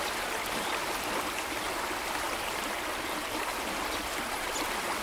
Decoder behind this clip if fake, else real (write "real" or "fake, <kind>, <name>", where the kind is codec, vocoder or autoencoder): real